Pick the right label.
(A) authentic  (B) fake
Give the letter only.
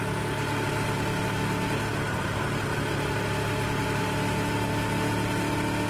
A